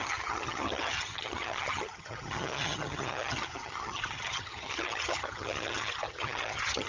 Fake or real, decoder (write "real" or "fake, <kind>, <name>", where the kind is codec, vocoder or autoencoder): fake, vocoder, HiFi-GAN